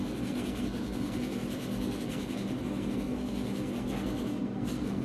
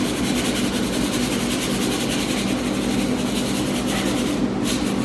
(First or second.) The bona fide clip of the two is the second